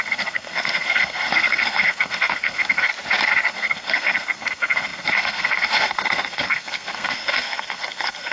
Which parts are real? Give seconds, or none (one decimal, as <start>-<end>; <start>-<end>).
2.9-3.5